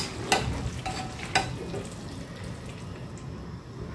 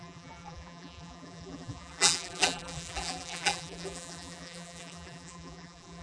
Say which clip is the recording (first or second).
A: first